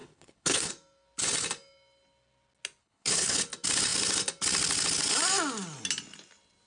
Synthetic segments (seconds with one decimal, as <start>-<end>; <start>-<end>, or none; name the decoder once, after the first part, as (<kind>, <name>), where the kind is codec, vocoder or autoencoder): 0.0-0.7 (codec, HILCodec); 2.8-3.4